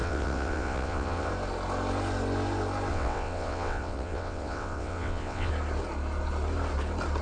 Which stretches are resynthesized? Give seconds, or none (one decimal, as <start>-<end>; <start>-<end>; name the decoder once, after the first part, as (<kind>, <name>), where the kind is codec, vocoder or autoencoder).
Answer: 0.0-1.3 (vocoder, WaveNeXt); 2.9-5.5